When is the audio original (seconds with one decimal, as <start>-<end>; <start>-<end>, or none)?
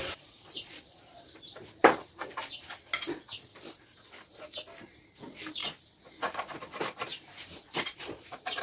2.7-7.1